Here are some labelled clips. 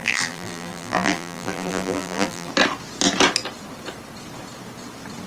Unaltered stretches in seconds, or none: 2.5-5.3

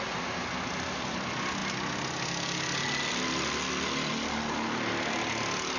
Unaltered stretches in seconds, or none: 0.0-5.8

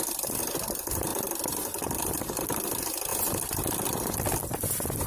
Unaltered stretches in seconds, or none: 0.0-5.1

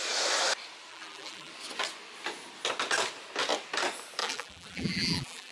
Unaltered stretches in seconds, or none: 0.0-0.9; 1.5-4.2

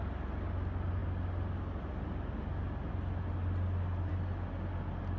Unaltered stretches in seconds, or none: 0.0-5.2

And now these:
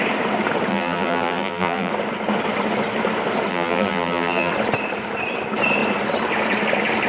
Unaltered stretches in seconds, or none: 0.0-0.7; 1.9-3.5; 4.5-7.1

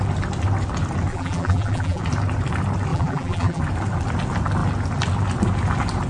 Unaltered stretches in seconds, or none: 0.0-1.1; 2.0-2.9; 3.6-6.1